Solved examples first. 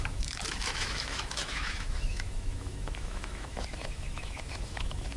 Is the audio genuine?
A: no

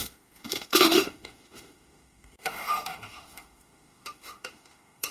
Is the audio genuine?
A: no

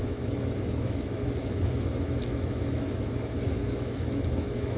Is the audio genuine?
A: no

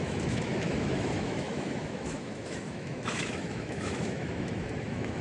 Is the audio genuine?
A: no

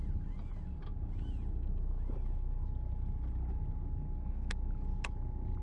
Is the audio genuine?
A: yes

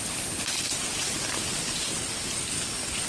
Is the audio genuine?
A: yes